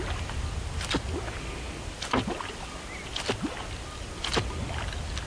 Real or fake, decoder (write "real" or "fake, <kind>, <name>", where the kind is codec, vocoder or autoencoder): real